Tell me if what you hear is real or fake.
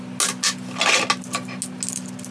real